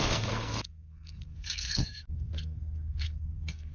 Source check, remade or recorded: remade